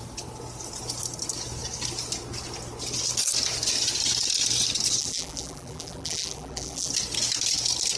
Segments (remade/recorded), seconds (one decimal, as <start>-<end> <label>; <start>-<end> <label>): 0.0-5.0 recorded; 5.0-6.9 remade; 6.9-8.0 recorded